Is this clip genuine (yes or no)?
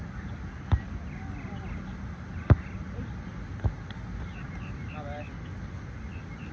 yes